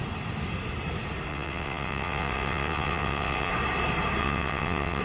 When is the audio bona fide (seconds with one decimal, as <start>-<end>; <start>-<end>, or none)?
0.0-1.3; 3.5-4.2